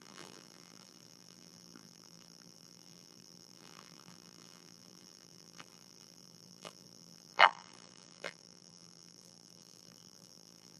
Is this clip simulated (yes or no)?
yes